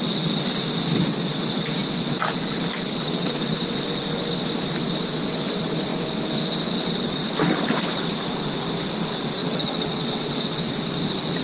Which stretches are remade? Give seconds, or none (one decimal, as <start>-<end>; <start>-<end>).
3.0-3.5; 9.4-10.7